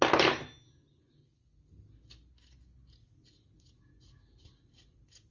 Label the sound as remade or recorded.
recorded